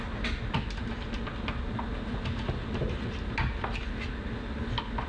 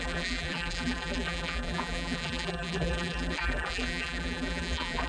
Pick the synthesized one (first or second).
second